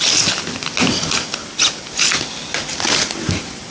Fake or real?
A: real